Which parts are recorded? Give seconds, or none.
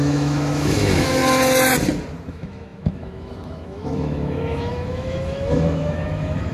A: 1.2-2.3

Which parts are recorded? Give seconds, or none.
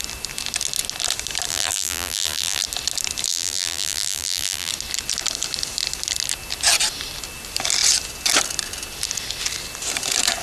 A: 0.0-1.5; 2.6-3.3; 4.7-10.4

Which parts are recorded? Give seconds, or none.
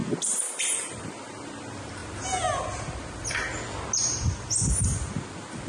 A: 0.0-5.7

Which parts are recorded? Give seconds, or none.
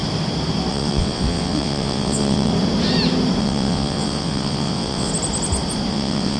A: 0.0-0.7; 2.5-3.4; 5.1-5.9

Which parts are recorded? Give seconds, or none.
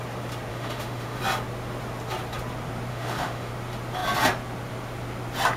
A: 0.0-0.5; 1.2-2.9; 3.5-5.6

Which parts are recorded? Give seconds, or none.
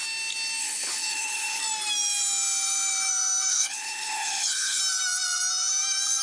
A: 0.0-0.6; 1.6-3.5; 4.8-6.2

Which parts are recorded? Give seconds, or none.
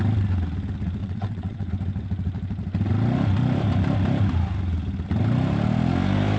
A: 0.0-1.0; 1.7-6.4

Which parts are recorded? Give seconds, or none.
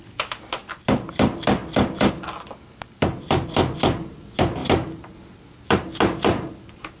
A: 0.0-7.0